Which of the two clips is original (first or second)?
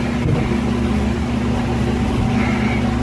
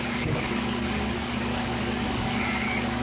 first